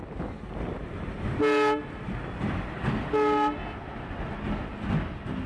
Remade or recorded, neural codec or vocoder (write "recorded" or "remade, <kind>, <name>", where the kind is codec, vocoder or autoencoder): recorded